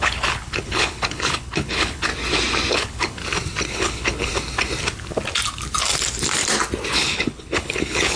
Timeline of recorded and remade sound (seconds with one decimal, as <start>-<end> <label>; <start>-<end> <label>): 0.0-2.1 remade; 2.1-2.7 recorded; 2.7-3.2 remade; 3.2-3.7 recorded; 3.7-4.3 remade; 4.3-6.9 recorded; 6.9-8.2 remade